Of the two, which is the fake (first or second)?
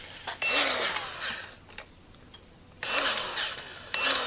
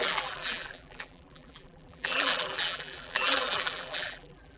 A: second